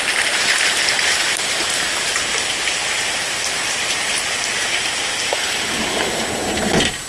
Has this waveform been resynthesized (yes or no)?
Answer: yes